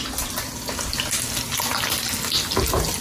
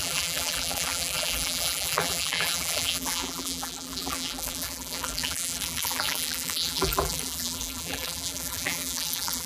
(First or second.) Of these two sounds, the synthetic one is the second